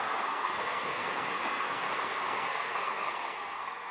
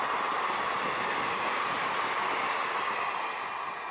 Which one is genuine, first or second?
second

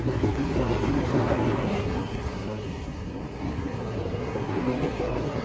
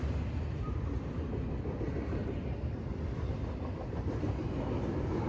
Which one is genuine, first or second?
second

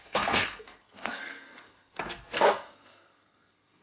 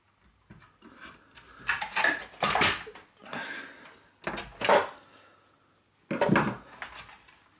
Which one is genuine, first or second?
second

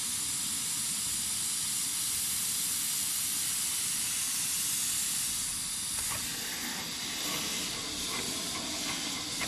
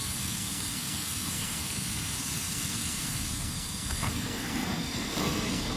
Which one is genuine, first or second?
first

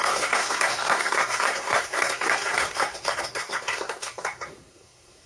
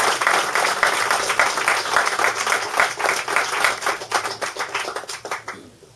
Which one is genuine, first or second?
second